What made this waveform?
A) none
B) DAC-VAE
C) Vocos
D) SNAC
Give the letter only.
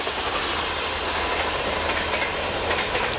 A